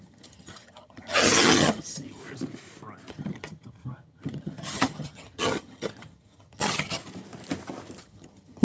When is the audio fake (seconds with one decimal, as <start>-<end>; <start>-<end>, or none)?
0.0-2.2; 3.1-7.0; 8.0-8.6